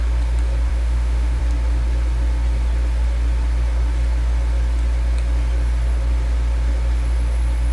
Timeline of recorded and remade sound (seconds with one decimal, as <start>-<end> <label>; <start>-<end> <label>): 0.0-0.7 recorded; 0.7-1.4 remade; 1.4-7.7 recorded